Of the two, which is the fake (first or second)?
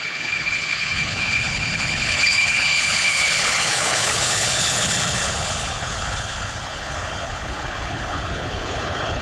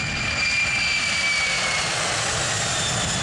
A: first